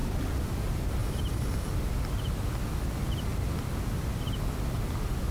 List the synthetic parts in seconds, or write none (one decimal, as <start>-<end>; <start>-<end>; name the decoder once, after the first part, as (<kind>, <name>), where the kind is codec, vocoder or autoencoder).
1.0-1.7 (vocoder, BigVGAN v2)